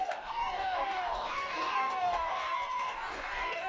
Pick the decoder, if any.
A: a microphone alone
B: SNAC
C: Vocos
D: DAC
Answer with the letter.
D